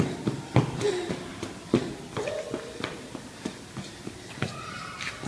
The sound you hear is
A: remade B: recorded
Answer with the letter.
B